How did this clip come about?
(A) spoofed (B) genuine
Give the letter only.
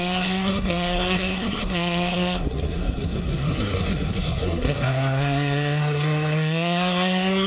A